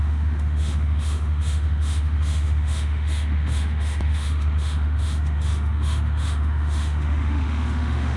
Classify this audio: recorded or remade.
remade